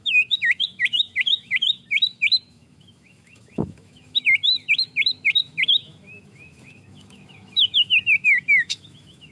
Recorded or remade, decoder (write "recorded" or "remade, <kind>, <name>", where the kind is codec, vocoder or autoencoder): remade, autoencoder, DAC-VAE